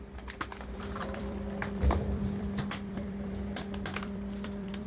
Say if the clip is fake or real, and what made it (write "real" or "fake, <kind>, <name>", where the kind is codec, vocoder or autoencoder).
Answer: fake, vocoder, BigVGAN v2